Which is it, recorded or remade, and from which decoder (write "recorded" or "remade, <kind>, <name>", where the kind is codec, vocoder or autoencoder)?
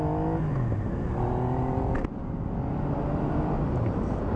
recorded